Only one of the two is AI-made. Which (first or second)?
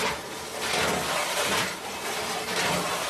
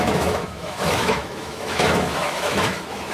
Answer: second